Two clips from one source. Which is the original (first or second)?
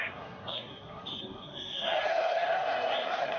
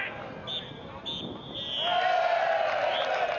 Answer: second